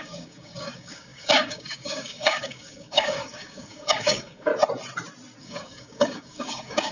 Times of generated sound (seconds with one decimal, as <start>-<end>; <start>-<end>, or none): 0.0-4.5; 5.4-6.9